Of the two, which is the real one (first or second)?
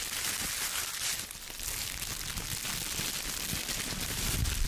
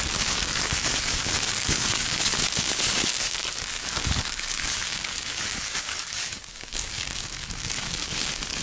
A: first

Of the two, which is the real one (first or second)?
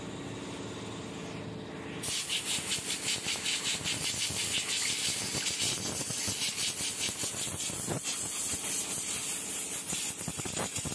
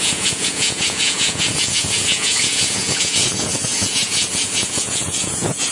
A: first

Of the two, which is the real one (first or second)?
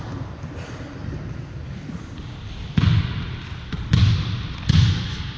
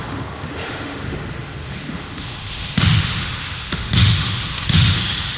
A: first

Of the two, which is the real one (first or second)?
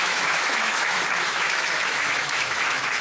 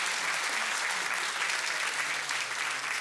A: second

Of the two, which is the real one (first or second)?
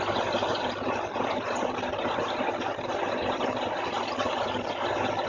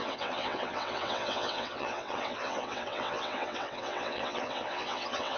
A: first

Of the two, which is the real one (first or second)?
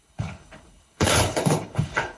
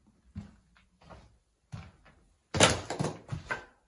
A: second